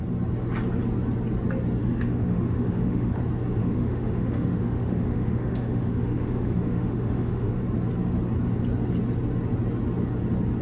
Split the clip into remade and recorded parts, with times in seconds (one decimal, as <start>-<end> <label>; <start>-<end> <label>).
0.0-1.8 recorded; 1.8-3.2 remade; 3.2-3.6 recorded; 3.6-7.6 remade; 7.6-10.6 recorded